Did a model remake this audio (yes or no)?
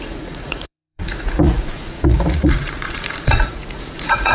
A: yes